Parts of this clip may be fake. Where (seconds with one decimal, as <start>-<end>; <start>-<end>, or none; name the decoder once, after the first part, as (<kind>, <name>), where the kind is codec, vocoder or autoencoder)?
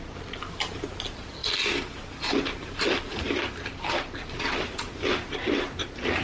1.4-5.1 (vocoder, BigVGAN v2)